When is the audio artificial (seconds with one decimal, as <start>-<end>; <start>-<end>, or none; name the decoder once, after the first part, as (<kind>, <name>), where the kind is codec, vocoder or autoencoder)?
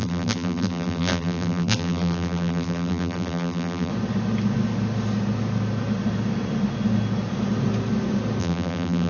0.0-3.9 (vocoder, BigVGAN v2); 8.4-9.1